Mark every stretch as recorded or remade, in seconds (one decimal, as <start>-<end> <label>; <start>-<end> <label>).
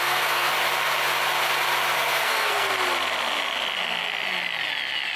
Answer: 0.0-0.5 remade; 0.5-1.9 recorded; 1.9-2.7 remade; 2.7-5.2 recorded